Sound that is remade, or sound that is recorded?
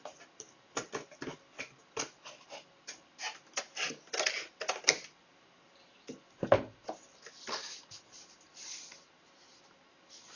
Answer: recorded